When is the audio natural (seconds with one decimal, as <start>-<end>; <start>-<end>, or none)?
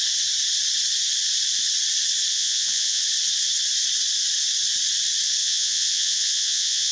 0.0-2.3; 3.0-5.4